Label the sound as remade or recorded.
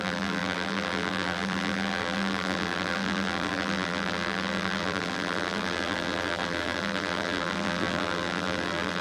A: remade